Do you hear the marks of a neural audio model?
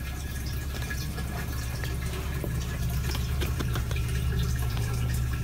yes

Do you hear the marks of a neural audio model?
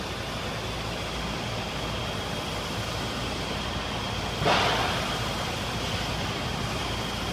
no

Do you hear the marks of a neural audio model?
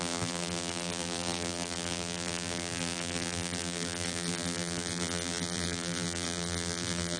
yes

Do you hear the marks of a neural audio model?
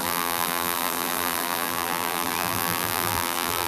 yes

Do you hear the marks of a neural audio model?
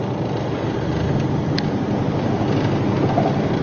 no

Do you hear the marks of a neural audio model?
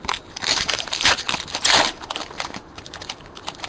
yes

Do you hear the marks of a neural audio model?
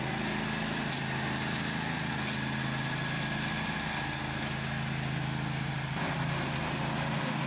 no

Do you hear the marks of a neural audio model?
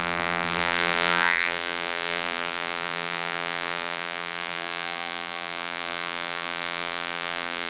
yes